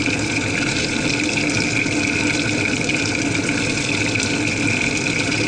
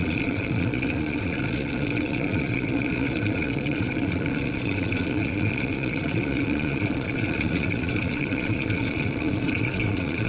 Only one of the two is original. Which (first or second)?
first